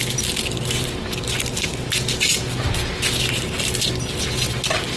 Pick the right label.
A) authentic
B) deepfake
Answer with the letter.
A